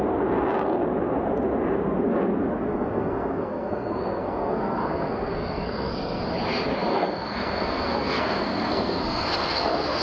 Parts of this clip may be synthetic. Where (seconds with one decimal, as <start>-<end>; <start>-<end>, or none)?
2.7-6.2; 6.9-10.0